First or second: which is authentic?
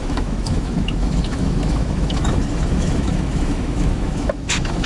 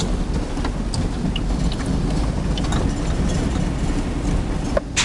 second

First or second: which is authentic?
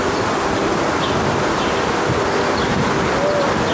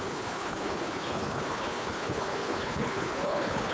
first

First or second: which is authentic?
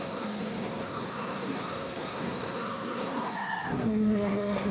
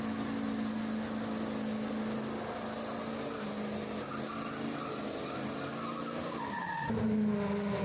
second